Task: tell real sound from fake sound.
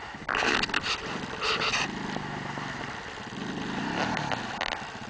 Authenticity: real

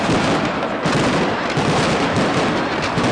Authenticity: real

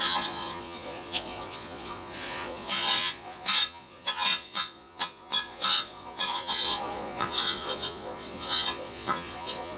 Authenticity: fake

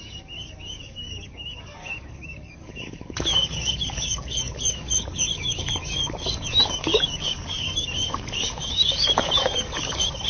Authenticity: fake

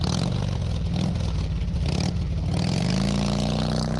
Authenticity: real